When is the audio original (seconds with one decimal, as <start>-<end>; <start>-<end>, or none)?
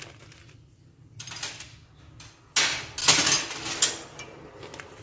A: 0.0-5.0